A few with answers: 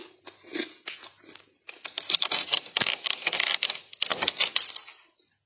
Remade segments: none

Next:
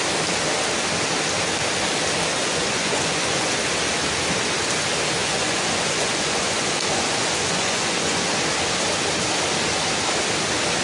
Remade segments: 2.4-3.6 (vocoder, Vocos); 5.2-8.2

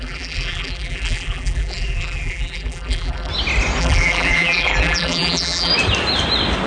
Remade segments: 0.0-3.3 (vocoder, BigVGAN v2); 3.8-5.7

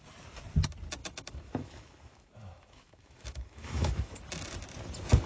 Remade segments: 1.0-4.2 (autoencoder, DAC-VAE)